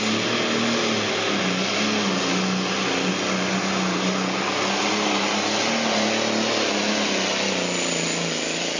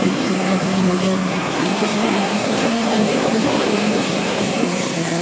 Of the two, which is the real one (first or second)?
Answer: first